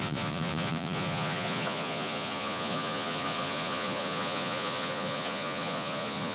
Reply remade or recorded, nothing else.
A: remade